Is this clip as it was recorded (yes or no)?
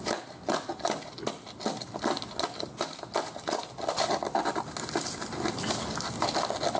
yes